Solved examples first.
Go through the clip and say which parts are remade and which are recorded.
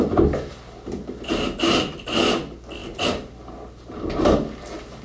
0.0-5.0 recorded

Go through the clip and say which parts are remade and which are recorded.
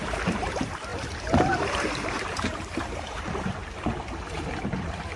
0.0-5.2 remade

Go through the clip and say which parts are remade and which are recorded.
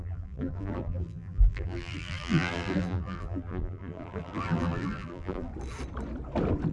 0.0-5.5 remade; 5.5-6.7 recorded